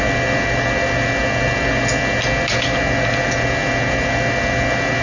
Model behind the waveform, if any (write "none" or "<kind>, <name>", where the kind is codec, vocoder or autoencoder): none